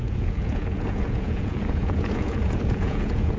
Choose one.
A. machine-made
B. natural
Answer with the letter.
A